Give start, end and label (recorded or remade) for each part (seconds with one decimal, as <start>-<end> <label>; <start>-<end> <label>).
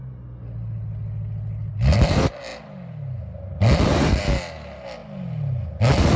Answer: 0.0-6.2 recorded